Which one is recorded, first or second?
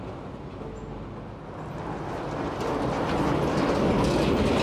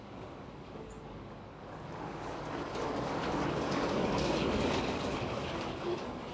first